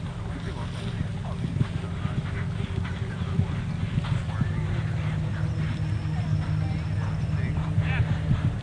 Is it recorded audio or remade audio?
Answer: recorded